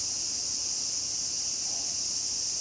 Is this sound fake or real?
real